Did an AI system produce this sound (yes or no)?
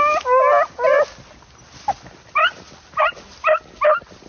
no